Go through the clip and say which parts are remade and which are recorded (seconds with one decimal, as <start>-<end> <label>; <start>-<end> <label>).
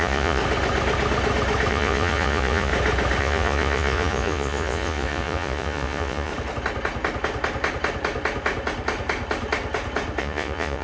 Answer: 0.0-0.4 remade; 0.4-1.7 recorded; 1.7-2.7 remade; 2.7-3.2 recorded; 3.2-6.3 remade; 6.3-10.2 recorded; 10.2-10.8 remade